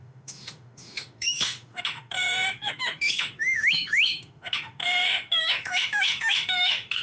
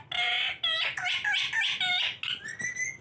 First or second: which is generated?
first